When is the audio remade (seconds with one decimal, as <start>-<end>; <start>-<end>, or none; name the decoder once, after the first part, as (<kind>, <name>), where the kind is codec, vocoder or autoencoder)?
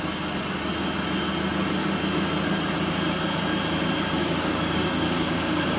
4.2-5.8 (codec, DAC)